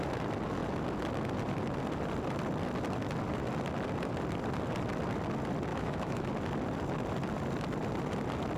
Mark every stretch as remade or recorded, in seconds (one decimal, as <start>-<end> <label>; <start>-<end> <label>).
0.0-5.7 recorded; 5.7-6.3 remade; 6.3-8.6 recorded